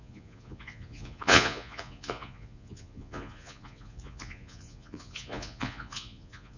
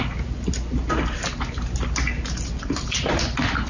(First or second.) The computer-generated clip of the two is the first